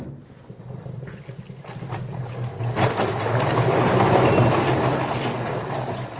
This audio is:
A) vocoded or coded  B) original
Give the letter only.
B